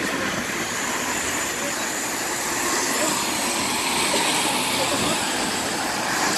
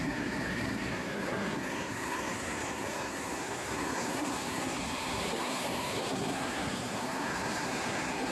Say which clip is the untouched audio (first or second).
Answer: first